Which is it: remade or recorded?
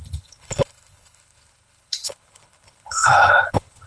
remade